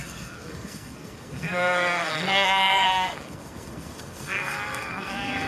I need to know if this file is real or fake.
fake